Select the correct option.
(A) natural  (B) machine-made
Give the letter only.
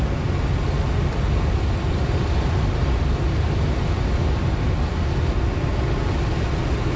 A